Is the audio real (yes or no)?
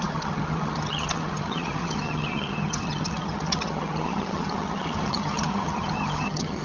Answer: no